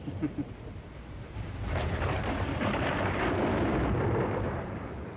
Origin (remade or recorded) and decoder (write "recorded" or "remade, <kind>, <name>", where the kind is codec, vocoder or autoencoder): remade, vocoder, BigVGAN v2